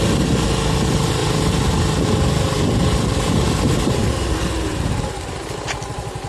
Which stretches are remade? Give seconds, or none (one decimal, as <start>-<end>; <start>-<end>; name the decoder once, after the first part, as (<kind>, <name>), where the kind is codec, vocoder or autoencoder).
none